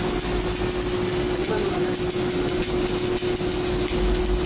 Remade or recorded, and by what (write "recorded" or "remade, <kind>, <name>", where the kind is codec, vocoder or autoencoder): recorded